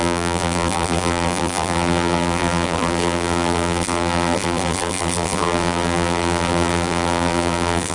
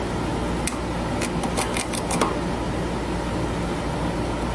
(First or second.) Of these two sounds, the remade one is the first